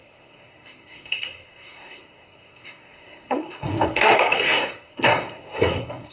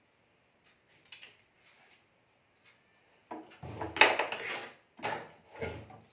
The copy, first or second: first